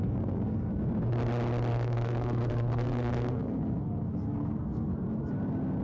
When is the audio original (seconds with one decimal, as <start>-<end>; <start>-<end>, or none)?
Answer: 0.7-1.7; 4.9-5.8